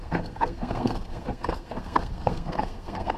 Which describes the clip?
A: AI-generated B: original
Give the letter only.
A